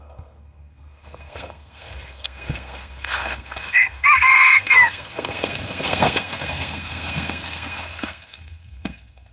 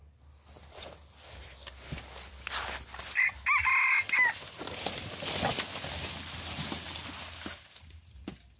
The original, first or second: second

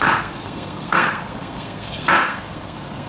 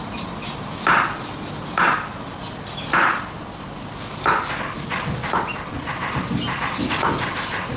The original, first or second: second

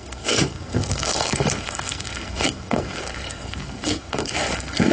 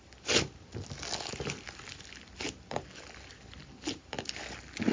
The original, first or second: second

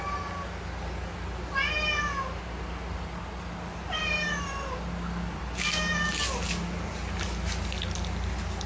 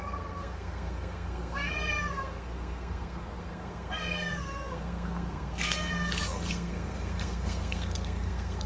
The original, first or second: first